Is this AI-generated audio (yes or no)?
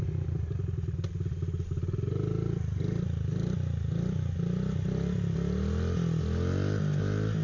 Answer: no